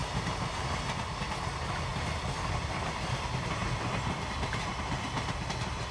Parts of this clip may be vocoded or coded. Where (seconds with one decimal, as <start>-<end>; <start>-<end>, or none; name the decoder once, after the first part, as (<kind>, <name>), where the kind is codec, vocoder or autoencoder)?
0.0-0.8 (vocoder, BigVGAN v2); 3.6-4.7